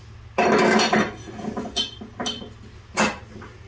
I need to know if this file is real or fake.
real